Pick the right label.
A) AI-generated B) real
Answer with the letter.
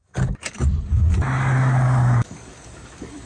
A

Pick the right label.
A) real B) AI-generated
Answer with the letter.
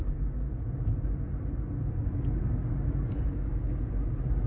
A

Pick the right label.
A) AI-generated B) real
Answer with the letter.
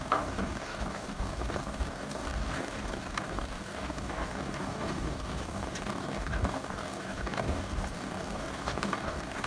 A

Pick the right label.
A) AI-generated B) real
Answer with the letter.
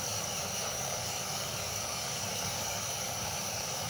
A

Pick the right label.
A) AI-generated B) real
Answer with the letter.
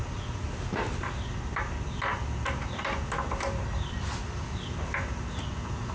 B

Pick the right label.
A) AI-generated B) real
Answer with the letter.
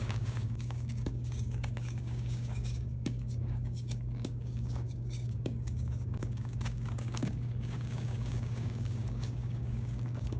A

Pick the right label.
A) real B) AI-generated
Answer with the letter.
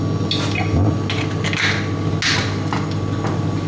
A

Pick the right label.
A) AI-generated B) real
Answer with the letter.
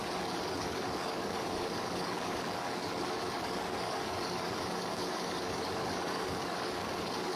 A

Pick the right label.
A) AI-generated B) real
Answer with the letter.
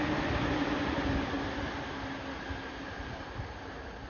B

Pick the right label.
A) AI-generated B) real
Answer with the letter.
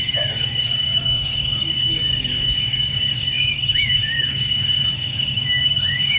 A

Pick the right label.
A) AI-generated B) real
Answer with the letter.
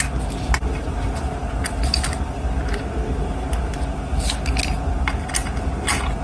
B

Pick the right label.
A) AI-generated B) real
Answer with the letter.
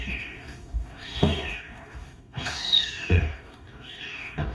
A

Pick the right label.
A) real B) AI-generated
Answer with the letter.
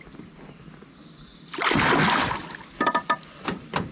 A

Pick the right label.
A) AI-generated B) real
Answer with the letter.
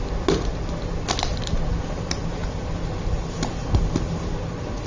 B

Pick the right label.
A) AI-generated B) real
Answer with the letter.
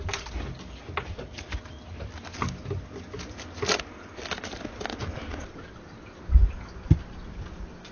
B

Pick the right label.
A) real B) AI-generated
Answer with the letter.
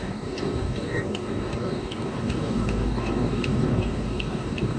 B